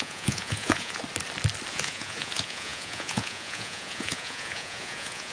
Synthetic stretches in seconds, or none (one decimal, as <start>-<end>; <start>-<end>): 0.0-1.0; 1.7-5.3